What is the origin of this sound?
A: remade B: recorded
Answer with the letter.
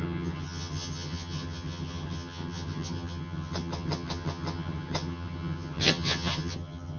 A